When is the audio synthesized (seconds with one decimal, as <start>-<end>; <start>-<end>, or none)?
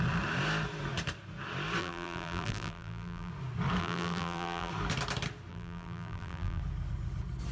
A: 1.8-3.3; 3.8-4.7; 5.5-6.6